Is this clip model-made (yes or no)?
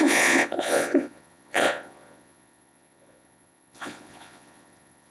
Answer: yes